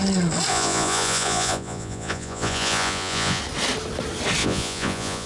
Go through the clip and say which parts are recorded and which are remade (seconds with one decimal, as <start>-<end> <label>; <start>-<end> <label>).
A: 0.0-0.5 recorded; 0.5-3.4 remade; 3.4-4.4 recorded; 4.4-5.3 remade